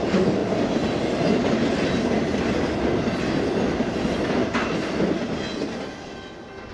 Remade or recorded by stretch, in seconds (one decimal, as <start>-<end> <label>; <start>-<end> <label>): 0.0-4.4 recorded; 4.4-5.2 remade; 5.2-6.7 recorded